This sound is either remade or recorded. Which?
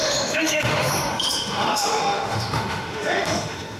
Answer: remade